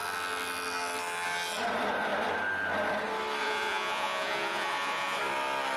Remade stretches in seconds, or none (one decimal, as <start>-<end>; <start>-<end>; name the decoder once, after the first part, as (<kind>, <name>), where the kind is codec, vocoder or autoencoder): 3.4-5.2 (vocoder, Vocos)